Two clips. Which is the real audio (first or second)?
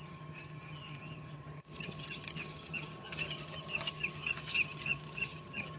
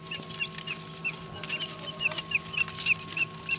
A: second